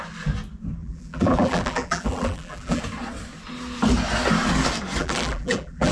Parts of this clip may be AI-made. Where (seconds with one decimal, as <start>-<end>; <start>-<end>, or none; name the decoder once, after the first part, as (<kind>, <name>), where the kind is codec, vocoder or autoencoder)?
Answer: 0.8-2.8 (vocoder, BigVGAN v2); 5.0-5.9